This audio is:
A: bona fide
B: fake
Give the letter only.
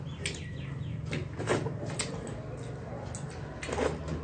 A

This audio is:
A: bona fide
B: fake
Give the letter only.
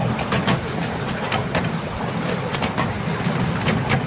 A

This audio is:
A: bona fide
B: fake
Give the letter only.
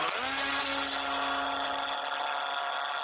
A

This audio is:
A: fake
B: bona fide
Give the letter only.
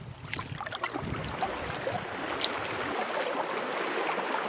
B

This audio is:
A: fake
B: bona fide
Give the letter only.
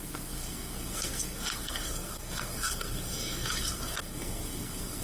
A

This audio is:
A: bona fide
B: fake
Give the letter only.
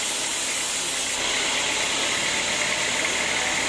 A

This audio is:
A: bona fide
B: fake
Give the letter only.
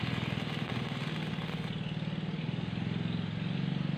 A